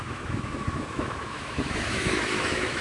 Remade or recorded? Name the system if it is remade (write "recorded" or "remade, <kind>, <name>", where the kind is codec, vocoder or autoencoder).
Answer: remade, autoencoder, DAC-VAE